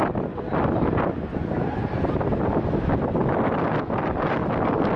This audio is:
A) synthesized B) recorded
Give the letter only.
B